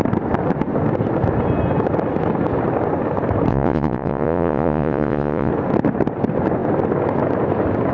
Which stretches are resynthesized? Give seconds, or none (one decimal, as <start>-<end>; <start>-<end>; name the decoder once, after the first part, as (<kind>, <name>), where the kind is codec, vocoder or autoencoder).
3.5-5.5 (vocoder, Vocos)